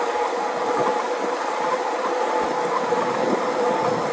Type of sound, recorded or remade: recorded